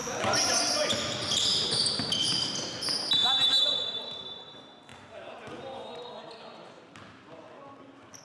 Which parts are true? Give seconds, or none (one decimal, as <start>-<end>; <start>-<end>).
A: 0.0-8.2